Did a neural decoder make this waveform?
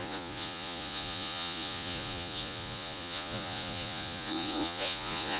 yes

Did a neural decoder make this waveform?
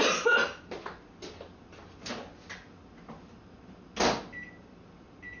no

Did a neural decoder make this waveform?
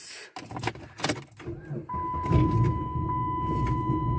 no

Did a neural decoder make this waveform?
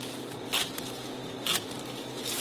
no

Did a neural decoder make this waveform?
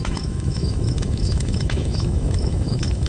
yes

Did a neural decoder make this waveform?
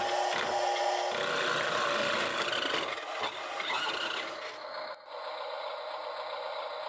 no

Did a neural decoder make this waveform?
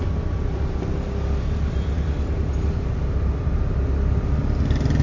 no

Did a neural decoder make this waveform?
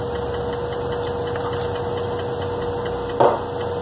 no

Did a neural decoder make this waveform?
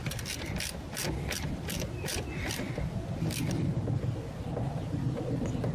no